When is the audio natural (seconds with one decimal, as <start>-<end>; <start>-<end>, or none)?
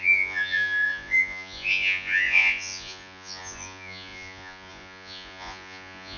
none